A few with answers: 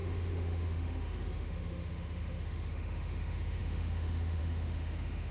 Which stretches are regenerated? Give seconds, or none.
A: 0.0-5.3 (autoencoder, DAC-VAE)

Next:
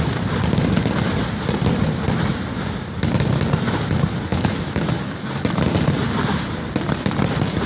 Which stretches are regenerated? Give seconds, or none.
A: 4.3-5.2 (autoencoder, DAC-VAE)